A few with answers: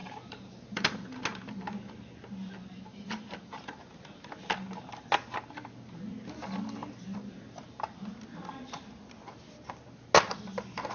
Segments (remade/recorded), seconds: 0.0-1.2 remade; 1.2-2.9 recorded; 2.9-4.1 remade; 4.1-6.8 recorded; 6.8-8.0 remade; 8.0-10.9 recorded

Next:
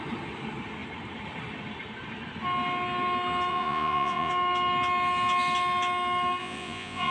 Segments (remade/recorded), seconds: 0.0-3.5 recorded; 3.5-4.3 remade; 4.3-6.4 recorded; 6.4-7.1 remade